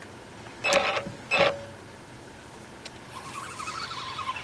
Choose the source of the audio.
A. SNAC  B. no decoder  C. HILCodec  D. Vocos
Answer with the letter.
B